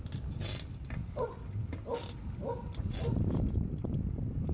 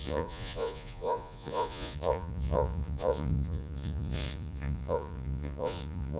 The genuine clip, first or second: first